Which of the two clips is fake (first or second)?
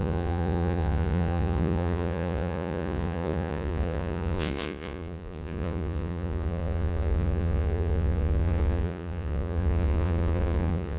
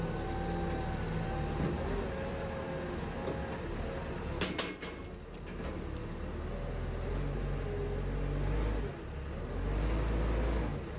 first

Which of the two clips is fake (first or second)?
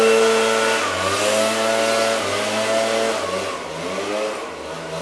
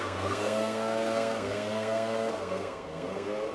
second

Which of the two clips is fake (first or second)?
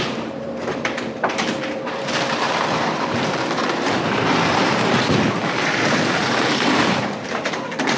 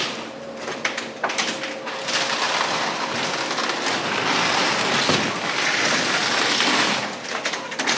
first